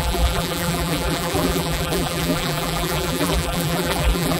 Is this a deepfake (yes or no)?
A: yes